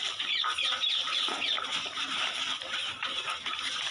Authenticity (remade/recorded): remade